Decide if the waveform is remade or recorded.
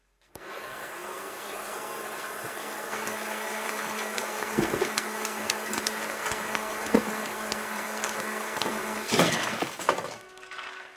remade